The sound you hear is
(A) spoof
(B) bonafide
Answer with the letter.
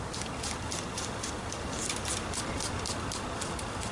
B